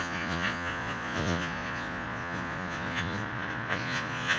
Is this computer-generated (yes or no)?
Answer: yes